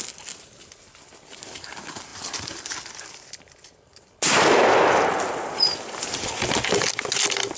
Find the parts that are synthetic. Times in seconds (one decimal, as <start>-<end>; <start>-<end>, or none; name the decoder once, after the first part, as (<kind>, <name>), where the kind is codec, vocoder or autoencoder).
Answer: none